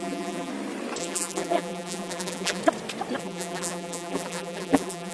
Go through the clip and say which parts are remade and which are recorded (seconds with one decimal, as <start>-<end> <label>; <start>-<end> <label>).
0.0-0.5 remade; 0.5-1.0 recorded; 1.0-2.6 remade; 2.6-3.2 recorded; 3.2-5.1 remade